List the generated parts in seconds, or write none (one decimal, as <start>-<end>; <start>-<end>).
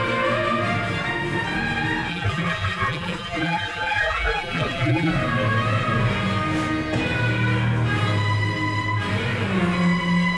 2.1-5.1